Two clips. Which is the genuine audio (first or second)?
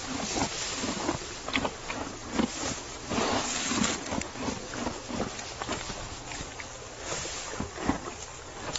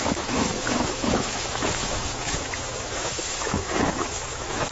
first